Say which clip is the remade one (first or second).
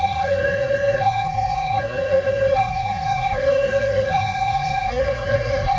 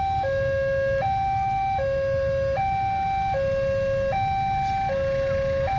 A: first